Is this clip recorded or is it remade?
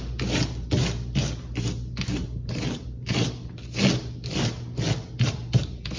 recorded